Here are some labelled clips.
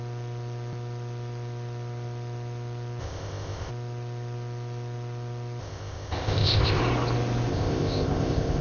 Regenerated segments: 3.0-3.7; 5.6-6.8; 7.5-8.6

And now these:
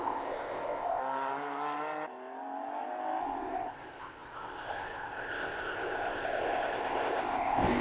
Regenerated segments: 0.0-1.0; 3.2-7.8

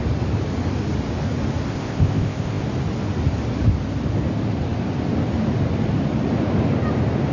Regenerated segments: 1.7-2.6